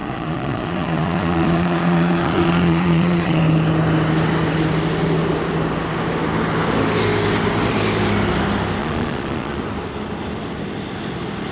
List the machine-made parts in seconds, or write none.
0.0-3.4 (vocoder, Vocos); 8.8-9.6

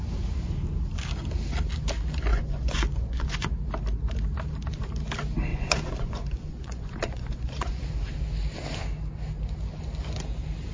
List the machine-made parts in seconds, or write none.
2.3-3.5 (vocoder, Vocos); 5.5-7.8

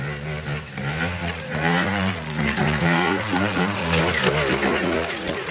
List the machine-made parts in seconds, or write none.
1.2-4.0 (vocoder, Vocos); 4.7-5.5